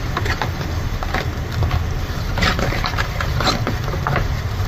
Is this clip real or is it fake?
real